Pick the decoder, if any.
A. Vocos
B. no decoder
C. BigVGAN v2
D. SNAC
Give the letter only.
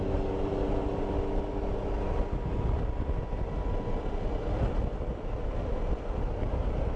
B